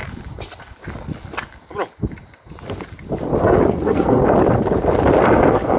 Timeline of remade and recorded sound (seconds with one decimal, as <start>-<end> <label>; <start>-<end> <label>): 0.0-3.4 recorded; 3.4-4.2 remade; 4.2-5.3 recorded; 5.3-5.8 remade